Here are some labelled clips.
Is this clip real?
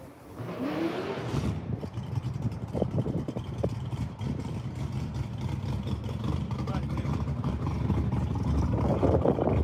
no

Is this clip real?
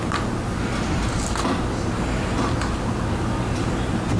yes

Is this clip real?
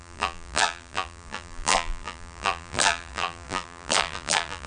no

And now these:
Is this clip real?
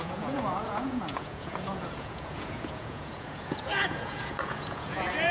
no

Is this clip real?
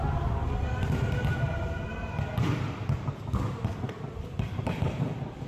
yes